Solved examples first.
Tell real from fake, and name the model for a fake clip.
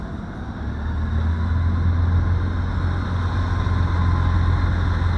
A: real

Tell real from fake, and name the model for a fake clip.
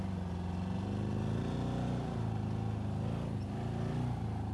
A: real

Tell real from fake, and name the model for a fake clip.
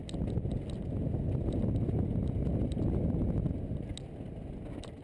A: real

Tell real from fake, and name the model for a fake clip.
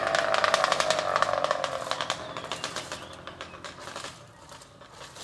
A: real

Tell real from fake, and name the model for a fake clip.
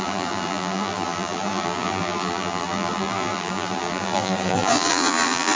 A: fake, vocoder, BigVGAN v2